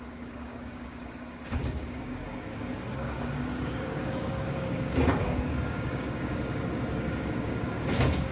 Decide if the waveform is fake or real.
fake